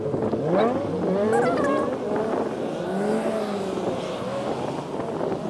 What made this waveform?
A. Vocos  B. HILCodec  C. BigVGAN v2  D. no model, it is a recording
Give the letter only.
D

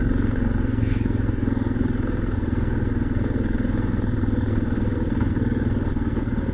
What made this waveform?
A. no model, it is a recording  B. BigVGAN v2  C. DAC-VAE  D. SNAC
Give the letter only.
D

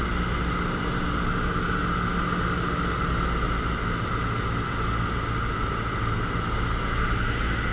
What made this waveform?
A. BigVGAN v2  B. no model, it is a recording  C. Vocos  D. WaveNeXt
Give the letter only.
B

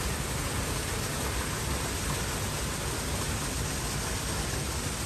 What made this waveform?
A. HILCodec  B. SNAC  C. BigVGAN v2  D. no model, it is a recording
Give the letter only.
D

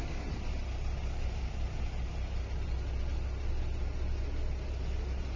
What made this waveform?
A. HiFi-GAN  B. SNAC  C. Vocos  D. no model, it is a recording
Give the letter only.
D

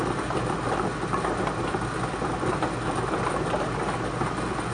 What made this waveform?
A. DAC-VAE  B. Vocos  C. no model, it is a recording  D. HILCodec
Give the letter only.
C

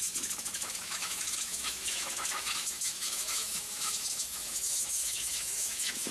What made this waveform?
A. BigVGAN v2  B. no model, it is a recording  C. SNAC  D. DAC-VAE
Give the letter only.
D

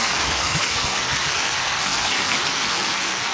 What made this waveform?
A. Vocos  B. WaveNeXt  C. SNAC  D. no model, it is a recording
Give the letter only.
C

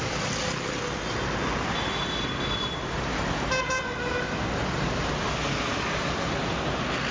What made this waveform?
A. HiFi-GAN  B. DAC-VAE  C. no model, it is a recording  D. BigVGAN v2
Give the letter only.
C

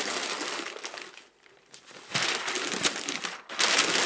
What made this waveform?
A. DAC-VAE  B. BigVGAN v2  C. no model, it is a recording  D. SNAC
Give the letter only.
C